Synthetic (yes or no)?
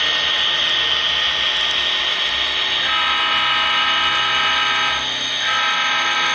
no